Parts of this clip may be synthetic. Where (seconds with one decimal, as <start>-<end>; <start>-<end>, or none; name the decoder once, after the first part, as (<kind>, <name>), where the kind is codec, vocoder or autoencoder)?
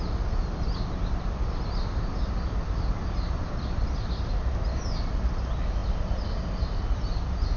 none